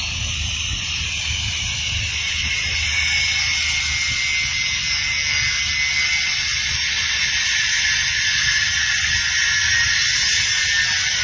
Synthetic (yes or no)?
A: no